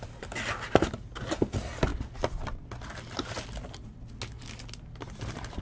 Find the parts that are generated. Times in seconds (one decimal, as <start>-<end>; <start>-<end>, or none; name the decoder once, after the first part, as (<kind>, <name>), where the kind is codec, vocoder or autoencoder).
none